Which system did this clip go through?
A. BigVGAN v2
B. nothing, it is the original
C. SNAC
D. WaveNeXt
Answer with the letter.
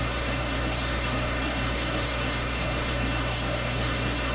C